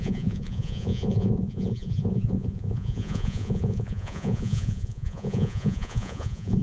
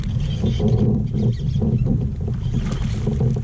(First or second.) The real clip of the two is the second